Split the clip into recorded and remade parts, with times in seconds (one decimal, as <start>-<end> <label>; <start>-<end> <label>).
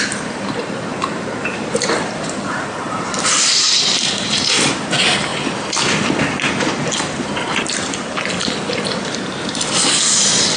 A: 0.0-5.3 remade; 5.3-7.0 recorded; 7.0-10.6 remade